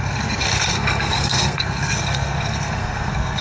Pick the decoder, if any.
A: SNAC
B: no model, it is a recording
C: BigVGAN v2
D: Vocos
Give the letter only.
A